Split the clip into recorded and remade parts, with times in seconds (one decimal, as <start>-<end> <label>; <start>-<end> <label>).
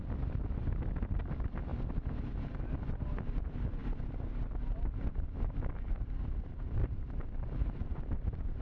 0.0-6.8 recorded; 6.8-8.6 remade